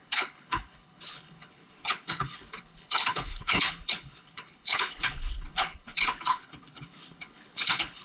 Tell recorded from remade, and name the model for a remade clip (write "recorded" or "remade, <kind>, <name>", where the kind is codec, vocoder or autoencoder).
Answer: remade, codec, HILCodec